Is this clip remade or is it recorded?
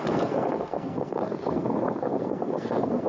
remade